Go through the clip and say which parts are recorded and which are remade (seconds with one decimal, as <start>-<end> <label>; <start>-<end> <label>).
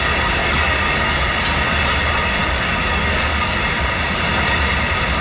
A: 0.0-0.4 recorded; 0.4-1.2 remade; 1.2-2.4 recorded; 2.4-3.6 remade; 3.6-5.2 recorded